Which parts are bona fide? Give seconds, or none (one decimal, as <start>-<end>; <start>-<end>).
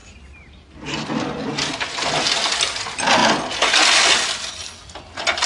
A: 0.0-5.5